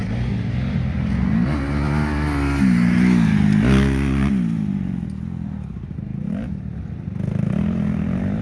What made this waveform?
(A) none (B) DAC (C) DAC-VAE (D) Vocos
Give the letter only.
A